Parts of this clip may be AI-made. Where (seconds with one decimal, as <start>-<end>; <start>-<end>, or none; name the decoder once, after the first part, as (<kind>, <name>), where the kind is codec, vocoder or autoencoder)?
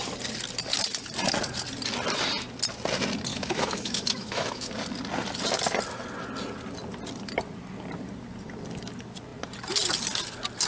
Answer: 3.3-4.7 (autoencoder, DAC-VAE)